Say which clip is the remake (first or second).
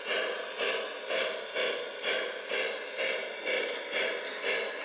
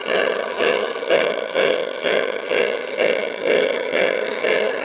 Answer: second